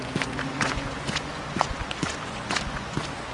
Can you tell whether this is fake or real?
fake